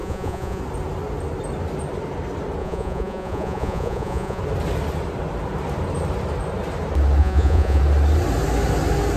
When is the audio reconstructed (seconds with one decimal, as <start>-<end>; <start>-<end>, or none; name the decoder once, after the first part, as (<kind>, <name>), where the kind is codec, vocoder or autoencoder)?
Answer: 0.0-0.6 (vocoder, Vocos); 2.6-4.4; 7.2-7.8